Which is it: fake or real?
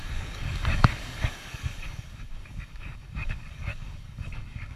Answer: fake